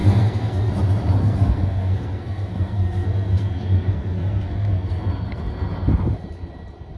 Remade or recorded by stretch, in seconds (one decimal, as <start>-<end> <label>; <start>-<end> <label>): 0.0-0.7 remade; 0.7-1.2 recorded; 1.2-5.4 remade; 5.4-7.0 recorded